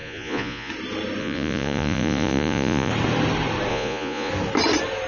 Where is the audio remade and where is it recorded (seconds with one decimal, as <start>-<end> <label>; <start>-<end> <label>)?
0.0-0.7 remade; 0.7-1.2 recorded; 1.2-2.9 remade; 2.9-3.7 recorded; 3.7-4.3 remade; 4.3-5.1 recorded